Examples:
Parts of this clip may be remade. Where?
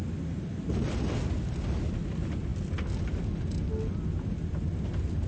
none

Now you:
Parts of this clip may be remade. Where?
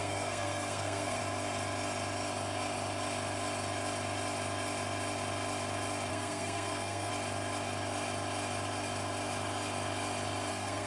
0.0-1.2; 6.1-7.1; 10.5-10.9